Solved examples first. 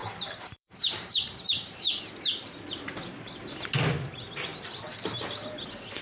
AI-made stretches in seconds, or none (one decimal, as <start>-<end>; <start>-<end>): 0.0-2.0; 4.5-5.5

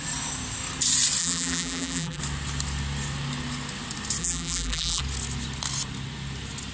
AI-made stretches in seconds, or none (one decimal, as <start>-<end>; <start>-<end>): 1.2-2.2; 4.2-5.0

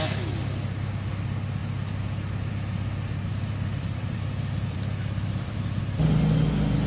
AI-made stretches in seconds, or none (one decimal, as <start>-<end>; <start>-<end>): 3.3-5.8

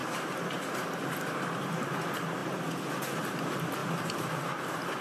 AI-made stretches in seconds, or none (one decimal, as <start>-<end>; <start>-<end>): 0.0-0.6

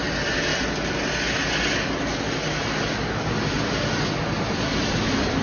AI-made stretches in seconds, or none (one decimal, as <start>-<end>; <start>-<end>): 0.0-0.5; 3.1-5.4

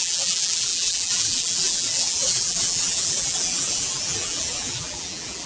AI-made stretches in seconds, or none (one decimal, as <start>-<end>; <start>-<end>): 0.0-5.5